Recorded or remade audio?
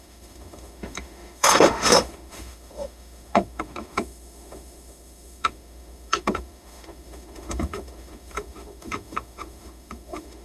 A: remade